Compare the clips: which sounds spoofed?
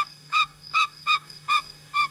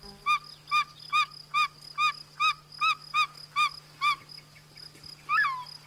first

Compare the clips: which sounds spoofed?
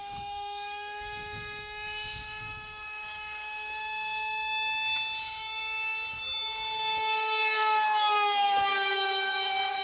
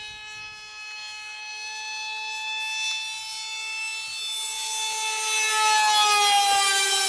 first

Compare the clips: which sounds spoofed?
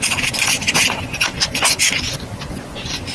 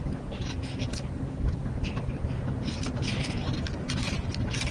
first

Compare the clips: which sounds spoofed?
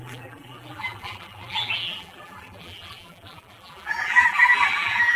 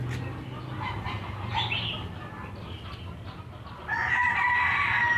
first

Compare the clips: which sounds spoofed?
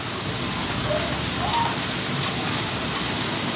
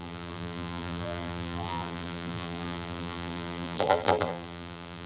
second